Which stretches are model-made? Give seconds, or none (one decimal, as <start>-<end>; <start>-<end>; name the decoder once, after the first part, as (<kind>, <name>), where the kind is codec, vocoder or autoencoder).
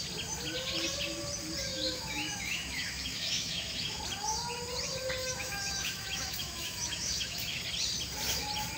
1.7-4.0 (autoencoder, DAC-VAE); 5.2-7.6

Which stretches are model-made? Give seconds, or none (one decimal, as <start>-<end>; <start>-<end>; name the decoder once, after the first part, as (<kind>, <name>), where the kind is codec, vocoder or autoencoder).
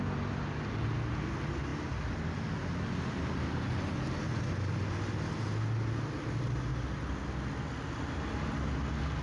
none